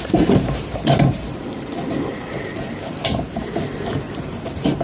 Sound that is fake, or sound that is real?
fake